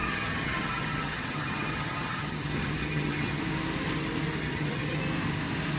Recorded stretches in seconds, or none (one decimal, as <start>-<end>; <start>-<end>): 3.4-4.4; 5.0-5.8